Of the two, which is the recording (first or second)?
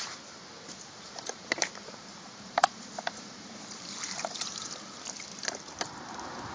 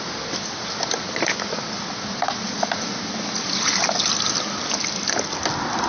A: second